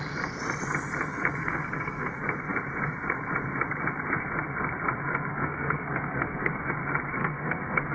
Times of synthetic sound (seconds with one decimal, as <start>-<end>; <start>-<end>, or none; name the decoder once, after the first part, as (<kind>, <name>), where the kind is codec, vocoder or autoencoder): 1.4-2.1 (codec, SNAC); 5.3-6.7; 7.2-7.9